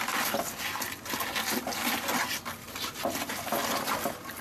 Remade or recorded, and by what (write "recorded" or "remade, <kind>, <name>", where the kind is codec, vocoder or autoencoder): recorded